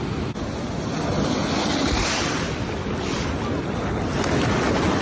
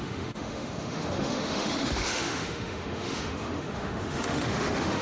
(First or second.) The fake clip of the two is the second